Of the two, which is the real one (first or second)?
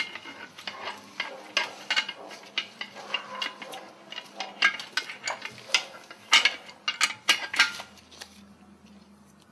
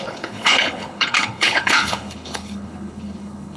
first